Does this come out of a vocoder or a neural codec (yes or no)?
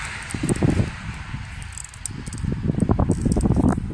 no